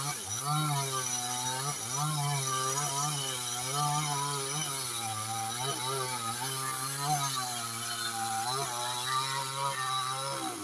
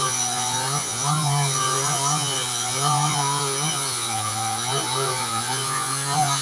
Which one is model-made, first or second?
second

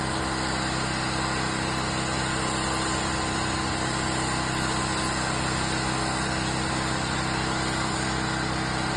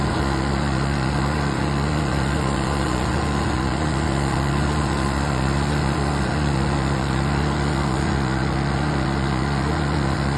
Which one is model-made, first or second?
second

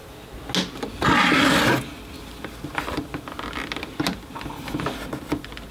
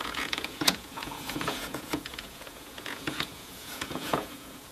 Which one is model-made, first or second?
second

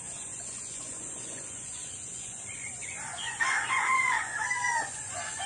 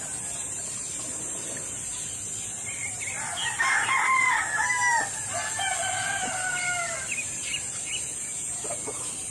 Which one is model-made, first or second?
first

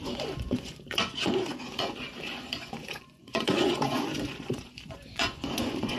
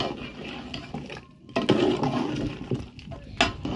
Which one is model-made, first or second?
first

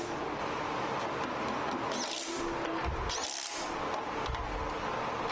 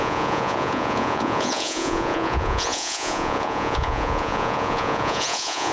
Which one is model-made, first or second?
second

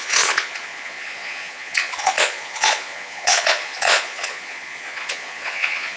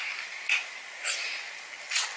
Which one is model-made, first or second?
first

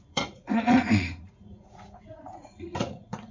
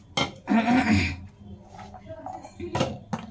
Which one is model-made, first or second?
first